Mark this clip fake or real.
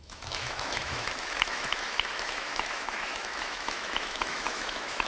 fake